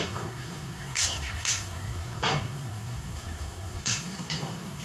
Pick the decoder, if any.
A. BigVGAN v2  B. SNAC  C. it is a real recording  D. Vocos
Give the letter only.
B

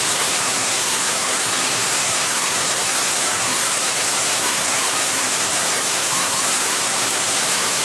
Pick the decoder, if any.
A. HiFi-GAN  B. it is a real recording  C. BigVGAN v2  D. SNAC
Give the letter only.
D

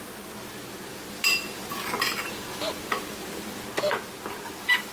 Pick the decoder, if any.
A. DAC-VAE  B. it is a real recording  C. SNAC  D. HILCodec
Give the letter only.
B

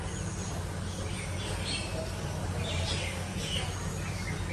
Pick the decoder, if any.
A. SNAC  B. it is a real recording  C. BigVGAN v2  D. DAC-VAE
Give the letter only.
B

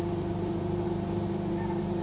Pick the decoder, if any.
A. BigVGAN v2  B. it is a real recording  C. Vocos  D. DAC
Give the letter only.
A